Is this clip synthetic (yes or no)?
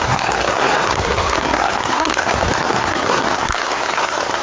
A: yes